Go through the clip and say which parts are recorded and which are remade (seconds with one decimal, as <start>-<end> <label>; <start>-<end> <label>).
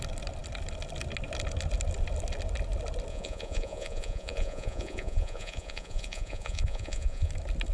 0.0-3.1 recorded; 3.1-7.3 remade; 7.3-7.7 recorded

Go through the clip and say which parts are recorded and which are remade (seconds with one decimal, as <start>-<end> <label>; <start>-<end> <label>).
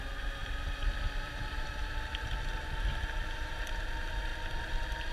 0.0-0.4 recorded; 0.4-3.5 remade; 3.5-5.1 recorded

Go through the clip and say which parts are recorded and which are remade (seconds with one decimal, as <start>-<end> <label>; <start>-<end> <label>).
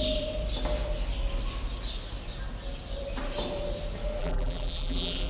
0.0-4.2 recorded; 4.2-5.3 remade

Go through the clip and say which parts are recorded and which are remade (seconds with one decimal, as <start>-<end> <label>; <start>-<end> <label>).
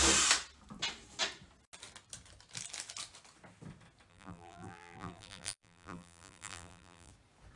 0.0-4.1 recorded; 4.1-7.1 remade; 7.1-7.6 recorded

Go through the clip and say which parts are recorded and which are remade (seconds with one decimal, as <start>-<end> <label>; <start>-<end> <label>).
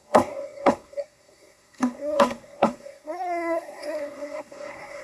0.0-5.0 remade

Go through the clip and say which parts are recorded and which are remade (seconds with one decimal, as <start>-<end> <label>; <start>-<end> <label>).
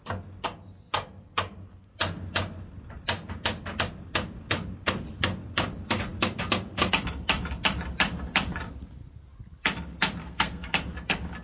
0.0-10.2 recorded; 10.2-10.7 remade; 10.7-11.4 recorded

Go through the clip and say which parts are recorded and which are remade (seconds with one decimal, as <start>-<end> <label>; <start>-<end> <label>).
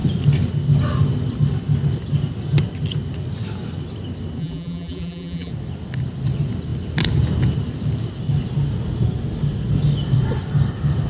0.0-4.4 recorded; 4.4-5.5 remade; 5.5-11.1 recorded